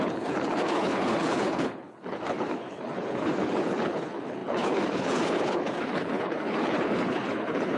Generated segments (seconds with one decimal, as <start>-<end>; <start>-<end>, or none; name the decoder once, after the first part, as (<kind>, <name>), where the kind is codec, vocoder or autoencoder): 0.0-7.8 (codec, HILCodec)